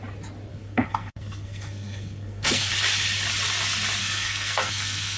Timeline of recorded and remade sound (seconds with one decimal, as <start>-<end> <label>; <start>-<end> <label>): 0.0-0.5 recorded; 0.5-2.7 remade; 2.7-4.0 recorded; 4.0-5.2 remade